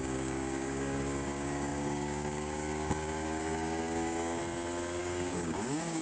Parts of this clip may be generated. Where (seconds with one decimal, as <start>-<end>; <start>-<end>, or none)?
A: 0.0-4.4; 5.0-6.0